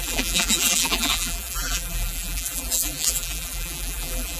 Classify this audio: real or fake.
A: fake